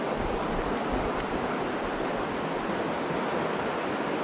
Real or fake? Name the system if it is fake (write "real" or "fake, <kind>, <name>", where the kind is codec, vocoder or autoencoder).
real